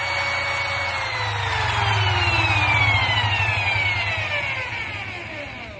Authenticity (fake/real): real